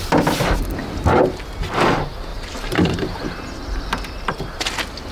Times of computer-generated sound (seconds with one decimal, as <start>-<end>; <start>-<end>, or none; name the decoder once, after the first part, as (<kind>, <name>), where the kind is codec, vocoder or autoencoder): 2.3-4.6 (vocoder, BigVGAN v2)